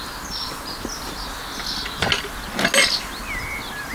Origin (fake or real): real